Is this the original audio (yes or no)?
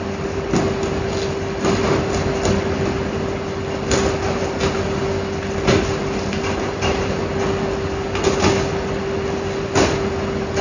yes